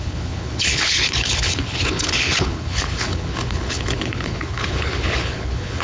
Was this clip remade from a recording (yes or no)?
yes